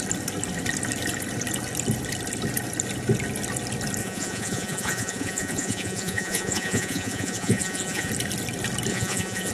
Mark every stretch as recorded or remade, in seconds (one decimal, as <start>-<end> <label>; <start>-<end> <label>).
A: 0.0-4.0 recorded; 4.0-8.1 remade; 8.1-8.9 recorded; 8.9-9.5 remade